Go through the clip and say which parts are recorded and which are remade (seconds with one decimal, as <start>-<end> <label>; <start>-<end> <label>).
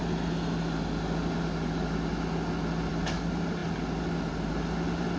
0.0-5.2 recorded